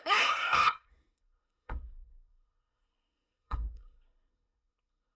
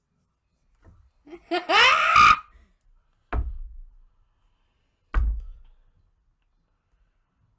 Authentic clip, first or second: second